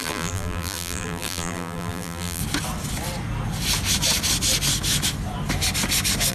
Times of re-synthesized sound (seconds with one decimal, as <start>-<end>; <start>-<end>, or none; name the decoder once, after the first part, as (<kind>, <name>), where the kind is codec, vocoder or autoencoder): 0.0-2.4 (vocoder, BigVGAN v2)